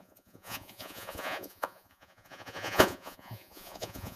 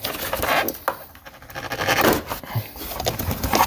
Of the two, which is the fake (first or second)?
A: first